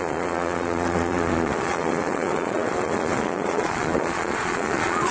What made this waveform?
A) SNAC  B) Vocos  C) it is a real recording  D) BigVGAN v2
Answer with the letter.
B